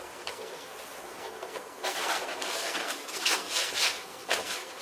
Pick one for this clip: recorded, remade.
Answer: remade